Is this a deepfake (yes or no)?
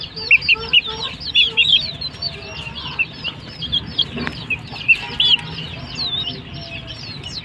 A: no